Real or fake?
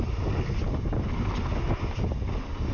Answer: real